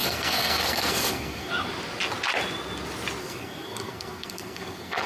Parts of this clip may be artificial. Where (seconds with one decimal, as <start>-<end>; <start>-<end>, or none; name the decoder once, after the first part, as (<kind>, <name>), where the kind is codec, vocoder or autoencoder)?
0.0-1.5 (codec, SNAC); 3.2-5.1